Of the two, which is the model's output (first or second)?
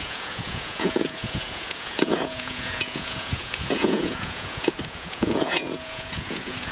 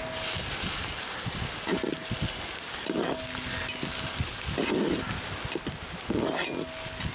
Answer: first